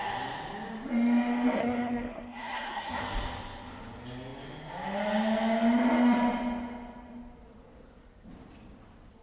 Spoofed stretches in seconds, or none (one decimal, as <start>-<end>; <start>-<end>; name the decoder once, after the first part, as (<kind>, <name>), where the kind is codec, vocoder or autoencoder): 1.6-3.0 (codec, SNAC)